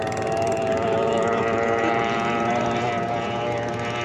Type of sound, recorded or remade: recorded